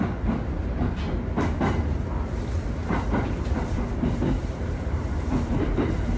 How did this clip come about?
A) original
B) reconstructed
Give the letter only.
A